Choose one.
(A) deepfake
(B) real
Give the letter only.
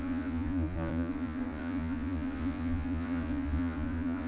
A